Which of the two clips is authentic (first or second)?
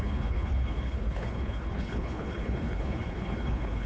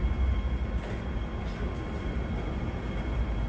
second